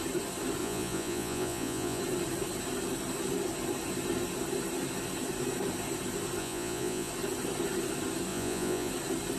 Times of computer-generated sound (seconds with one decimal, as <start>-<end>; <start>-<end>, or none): 0.6-2.0; 6.4-7.1; 8.3-8.9